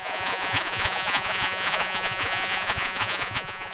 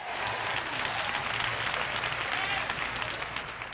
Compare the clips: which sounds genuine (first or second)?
second